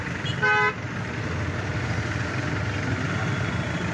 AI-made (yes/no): no